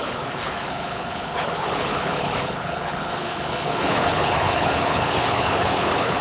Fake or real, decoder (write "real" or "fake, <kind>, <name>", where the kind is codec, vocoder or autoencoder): fake, codec, HILCodec